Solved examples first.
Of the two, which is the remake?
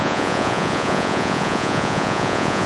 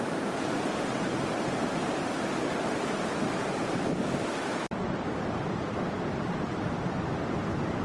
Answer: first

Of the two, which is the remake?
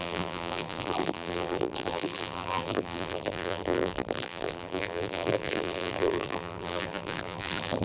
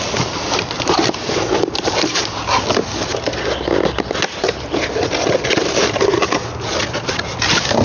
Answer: first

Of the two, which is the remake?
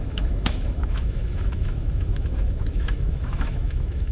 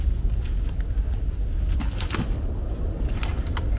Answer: first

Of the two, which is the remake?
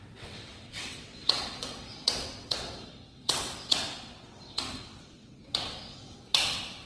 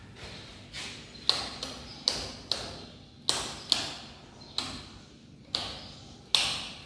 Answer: first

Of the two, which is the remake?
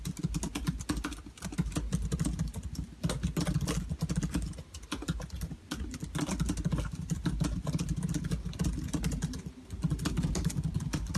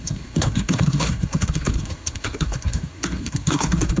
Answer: second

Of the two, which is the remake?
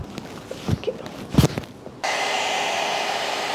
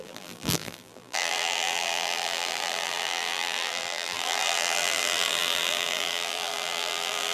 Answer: second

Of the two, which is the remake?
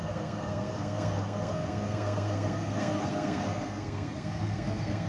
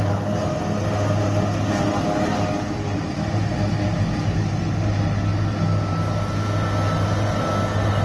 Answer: first